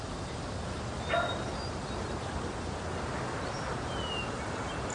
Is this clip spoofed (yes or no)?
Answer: no